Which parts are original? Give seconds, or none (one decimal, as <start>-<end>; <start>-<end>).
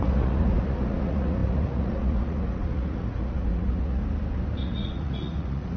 4.0-4.6